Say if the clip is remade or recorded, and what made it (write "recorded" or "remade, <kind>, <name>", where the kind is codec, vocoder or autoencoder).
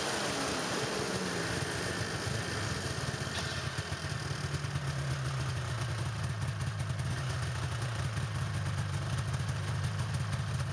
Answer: recorded